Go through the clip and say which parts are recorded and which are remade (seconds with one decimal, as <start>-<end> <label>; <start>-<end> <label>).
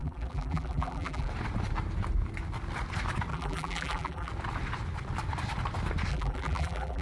0.0-1.3 remade; 1.3-3.3 recorded; 3.3-4.3 remade; 4.3-6.1 recorded; 6.1-7.0 remade